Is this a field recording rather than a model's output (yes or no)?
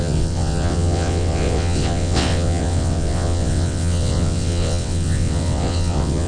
no